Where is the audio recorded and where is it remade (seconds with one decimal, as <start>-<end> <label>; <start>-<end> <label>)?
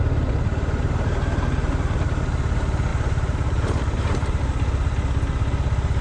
0.0-2.9 recorded; 2.9-4.4 remade; 4.4-6.0 recorded